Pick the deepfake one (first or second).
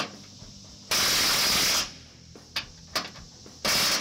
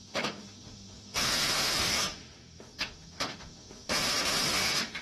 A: second